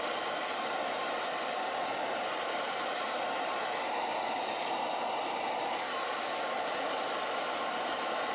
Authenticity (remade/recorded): recorded